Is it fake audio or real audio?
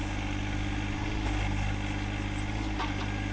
real